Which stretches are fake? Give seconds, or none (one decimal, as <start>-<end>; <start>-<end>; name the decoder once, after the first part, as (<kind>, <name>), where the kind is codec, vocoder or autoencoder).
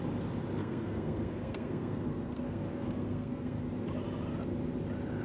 0.6-3.7 (codec, SNAC)